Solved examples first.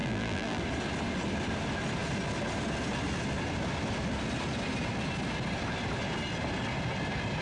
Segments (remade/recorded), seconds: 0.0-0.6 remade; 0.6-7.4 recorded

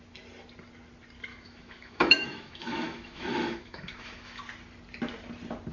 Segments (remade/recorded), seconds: 0.0-1.3 recorded; 1.3-4.4 remade; 4.4-5.7 recorded

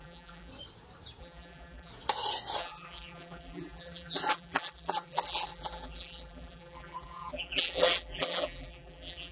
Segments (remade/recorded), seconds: 0.0-0.5 remade; 0.5-1.2 recorded; 1.2-1.9 remade; 1.9-2.6 recorded; 2.6-9.3 remade

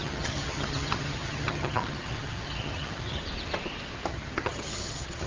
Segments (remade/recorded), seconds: 0.0-3.2 remade; 3.2-4.1 recorded; 4.1-5.3 remade

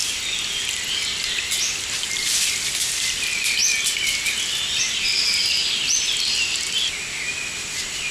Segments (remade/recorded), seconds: 0.0-8.1 recorded

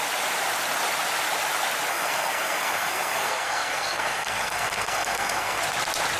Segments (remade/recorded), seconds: 0.0-1.9 recorded; 1.9-5.6 remade; 5.6-6.2 recorded

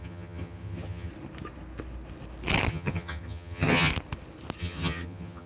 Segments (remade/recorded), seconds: 0.0-1.1 remade; 1.1-2.7 recorded; 2.7-3.9 remade; 3.9-4.6 recorded; 4.6-5.5 remade

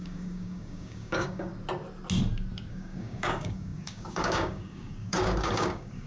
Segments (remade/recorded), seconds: 0.0-1.5 remade; 1.5-2.7 recorded; 2.7-6.1 remade